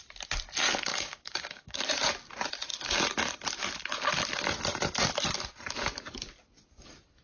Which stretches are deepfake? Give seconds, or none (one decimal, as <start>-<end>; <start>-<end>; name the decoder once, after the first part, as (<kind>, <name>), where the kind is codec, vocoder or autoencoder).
0.9-1.8 (codec, DAC)